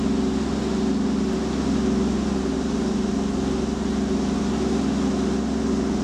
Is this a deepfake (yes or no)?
no